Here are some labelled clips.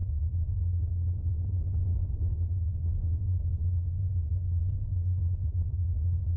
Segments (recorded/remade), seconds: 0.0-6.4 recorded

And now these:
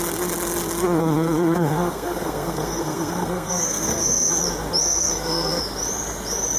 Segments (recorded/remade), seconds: 0.0-1.0 recorded; 1.0-4.3 remade; 4.3-4.8 recorded; 4.8-5.6 remade; 5.6-6.6 recorded

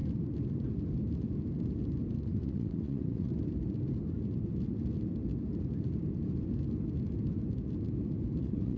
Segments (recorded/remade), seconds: 0.0-2.2 recorded; 2.2-3.3 remade; 3.3-8.4 recorded; 8.4-8.8 remade